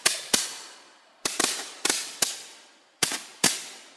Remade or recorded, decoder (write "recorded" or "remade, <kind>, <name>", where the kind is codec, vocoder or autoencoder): recorded